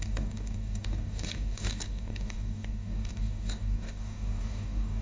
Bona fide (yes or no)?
no